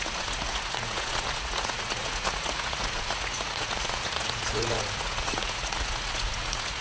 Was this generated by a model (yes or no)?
yes